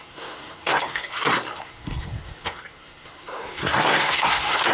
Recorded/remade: remade